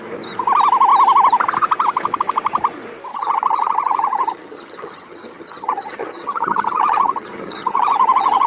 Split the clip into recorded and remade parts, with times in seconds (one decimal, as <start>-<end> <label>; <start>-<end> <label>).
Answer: 0.0-3.1 recorded; 3.1-8.5 remade